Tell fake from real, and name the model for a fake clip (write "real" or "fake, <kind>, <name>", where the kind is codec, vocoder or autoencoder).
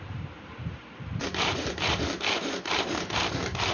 fake, vocoder, BigVGAN v2